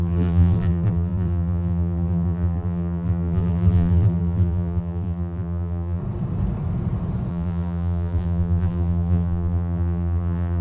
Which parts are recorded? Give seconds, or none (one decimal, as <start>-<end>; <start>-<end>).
6.0-7.3